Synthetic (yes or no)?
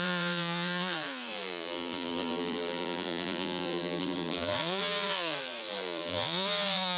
yes